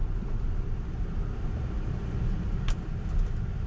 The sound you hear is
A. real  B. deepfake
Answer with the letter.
A